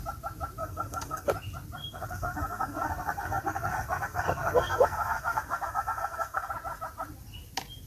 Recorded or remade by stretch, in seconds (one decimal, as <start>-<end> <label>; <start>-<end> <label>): 0.0-0.6 recorded; 0.6-1.3 remade; 1.3-1.8 recorded; 1.8-6.5 remade; 6.5-7.9 recorded